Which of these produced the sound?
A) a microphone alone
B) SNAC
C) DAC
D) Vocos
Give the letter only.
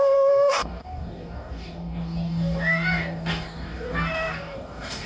C